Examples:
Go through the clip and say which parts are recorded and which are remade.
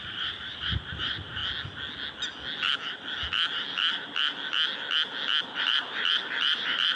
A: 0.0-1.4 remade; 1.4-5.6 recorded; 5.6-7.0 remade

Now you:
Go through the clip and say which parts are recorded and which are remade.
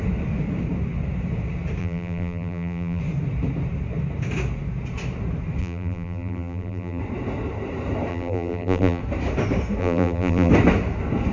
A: 0.0-1.8 recorded; 1.8-3.0 remade; 3.0-5.6 recorded; 5.6-7.0 remade; 7.0-8.1 recorded; 8.1-9.0 remade; 9.0-9.8 recorded; 9.8-10.5 remade; 10.5-11.3 recorded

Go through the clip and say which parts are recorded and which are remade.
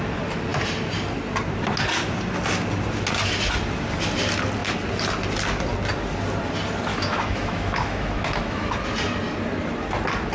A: 0.0-6.9 recorded; 6.9-8.7 remade; 8.7-10.3 recorded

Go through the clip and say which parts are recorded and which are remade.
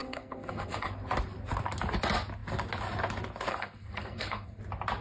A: 0.0-0.9 remade; 0.9-3.5 recorded; 3.5-4.6 remade; 4.6-5.0 recorded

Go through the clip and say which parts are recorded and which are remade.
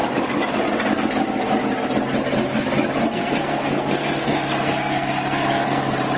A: 0.0-3.0 recorded; 3.0-5.8 remade; 5.8-6.2 recorded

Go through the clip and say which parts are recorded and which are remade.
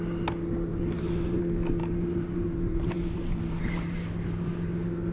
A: 0.0-0.7 recorded; 0.7-1.4 remade; 1.4-1.8 recorded; 1.8-3.6 remade; 3.6-5.1 recorded